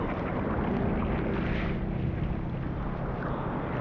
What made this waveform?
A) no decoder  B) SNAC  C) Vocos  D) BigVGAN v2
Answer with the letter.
A